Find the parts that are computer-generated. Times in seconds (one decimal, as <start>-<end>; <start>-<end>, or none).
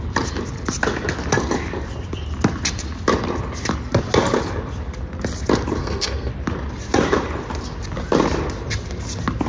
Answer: 5.8-6.3